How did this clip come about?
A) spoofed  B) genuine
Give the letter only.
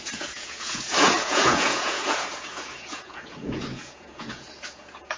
A